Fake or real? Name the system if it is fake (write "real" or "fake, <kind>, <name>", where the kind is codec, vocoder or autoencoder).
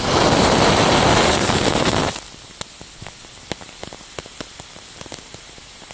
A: real